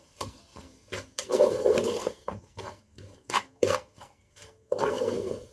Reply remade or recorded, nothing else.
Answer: remade